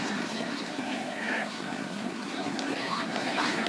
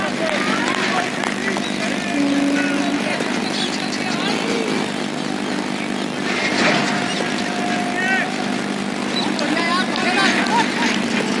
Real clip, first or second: second